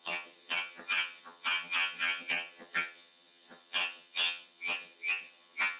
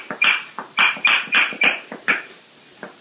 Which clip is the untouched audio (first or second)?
second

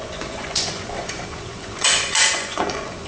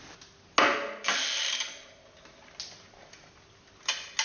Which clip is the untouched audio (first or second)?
second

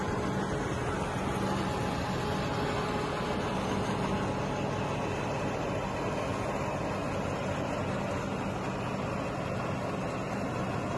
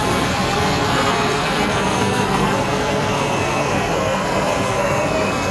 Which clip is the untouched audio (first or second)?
first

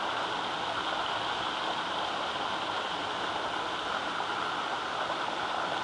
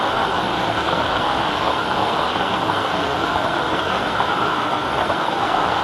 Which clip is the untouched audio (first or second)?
first